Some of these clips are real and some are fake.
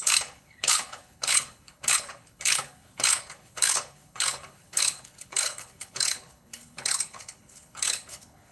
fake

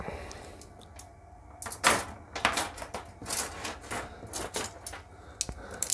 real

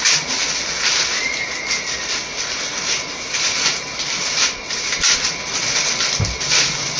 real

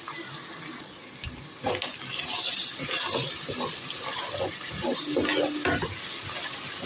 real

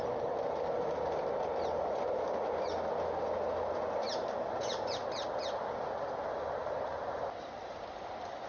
real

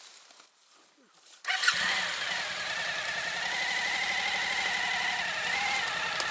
real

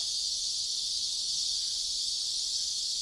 real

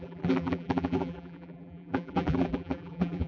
fake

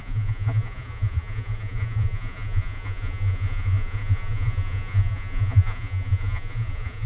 fake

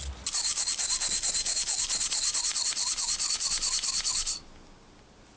real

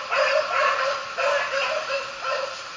real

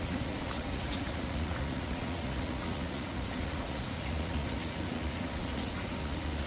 fake